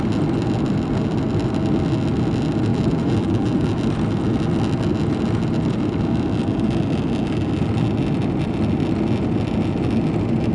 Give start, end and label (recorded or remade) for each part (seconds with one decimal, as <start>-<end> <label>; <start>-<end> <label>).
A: 0.0-2.7 recorded; 2.7-3.7 remade; 3.7-10.5 recorded

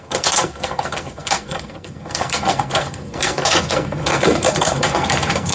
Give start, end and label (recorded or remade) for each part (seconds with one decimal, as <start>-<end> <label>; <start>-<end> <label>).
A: 0.0-5.5 remade

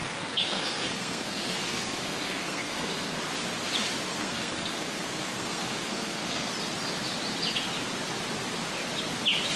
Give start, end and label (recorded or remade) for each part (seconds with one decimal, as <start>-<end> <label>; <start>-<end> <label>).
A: 0.0-3.2 remade; 3.2-4.1 recorded; 4.1-6.5 remade; 6.5-9.6 recorded

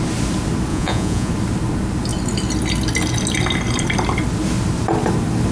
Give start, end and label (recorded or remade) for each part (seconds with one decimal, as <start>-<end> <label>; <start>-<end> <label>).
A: 0.0-0.7 recorded; 0.7-1.3 remade; 1.3-5.5 recorded

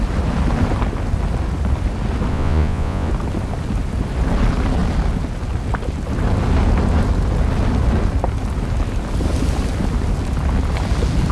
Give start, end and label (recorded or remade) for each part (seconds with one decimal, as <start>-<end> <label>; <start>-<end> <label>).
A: 0.0-2.3 recorded; 2.3-3.1 remade; 3.1-11.3 recorded

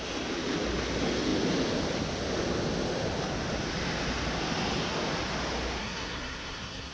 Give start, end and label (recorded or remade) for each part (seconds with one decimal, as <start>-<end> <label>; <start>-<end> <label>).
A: 0.0-5.8 recorded; 5.8-6.9 remade

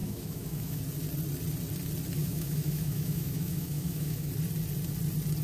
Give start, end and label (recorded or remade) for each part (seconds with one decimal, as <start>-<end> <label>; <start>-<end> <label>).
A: 0.0-0.8 remade; 0.8-2.2 recorded; 2.2-4.3 remade; 4.3-5.4 recorded

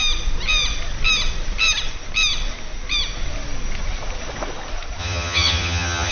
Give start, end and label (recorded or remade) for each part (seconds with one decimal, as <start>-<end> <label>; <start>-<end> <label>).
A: 0.0-5.0 recorded; 5.0-6.1 remade